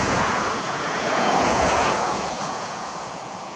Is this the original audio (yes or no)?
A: no